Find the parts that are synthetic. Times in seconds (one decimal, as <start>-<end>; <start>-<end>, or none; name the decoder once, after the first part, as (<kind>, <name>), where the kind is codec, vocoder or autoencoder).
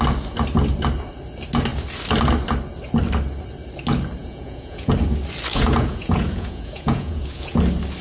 4.2-4.9 (vocoder, Vocos); 5.5-7.5